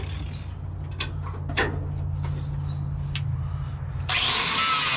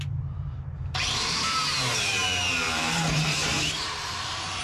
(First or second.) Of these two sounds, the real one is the first